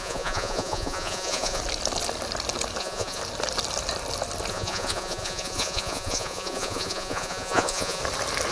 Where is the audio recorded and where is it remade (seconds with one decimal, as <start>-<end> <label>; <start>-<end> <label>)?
0.0-1.6 remade; 1.6-2.8 recorded; 2.8-3.2 remade; 3.2-4.5 recorded; 4.5-8.0 remade; 8.0-8.5 recorded